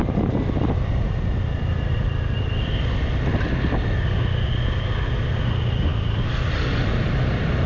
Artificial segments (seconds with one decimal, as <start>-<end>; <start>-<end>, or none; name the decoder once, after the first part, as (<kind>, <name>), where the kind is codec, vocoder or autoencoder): none

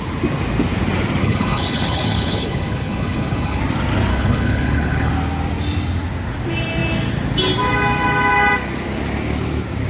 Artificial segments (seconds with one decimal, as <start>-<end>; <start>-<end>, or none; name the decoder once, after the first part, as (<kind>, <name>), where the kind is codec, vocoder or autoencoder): 1.2-3.6 (codec, HILCodec); 4.1-5.1

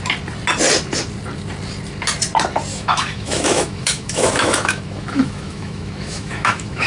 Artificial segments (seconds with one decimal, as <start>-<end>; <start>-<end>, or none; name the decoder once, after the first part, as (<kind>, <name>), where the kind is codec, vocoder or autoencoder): 2.7-6.9 (autoencoder, DAC-VAE)

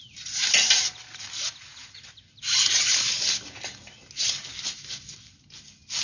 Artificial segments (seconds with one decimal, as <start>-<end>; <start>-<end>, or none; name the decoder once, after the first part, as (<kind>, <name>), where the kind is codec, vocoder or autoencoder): none